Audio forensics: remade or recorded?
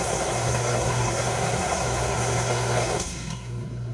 remade